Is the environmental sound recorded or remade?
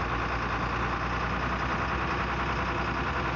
recorded